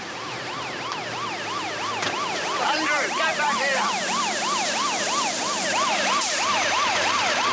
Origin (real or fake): real